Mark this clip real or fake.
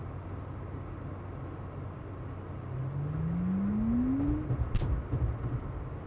real